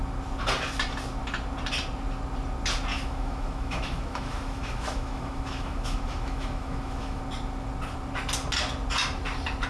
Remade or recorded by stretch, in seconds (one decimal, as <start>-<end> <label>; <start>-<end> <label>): 0.0-2.9 recorded; 2.9-7.2 remade; 7.2-9.7 recorded